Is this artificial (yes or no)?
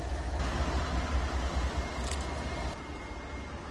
no